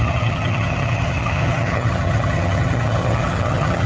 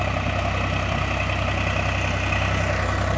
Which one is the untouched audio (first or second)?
second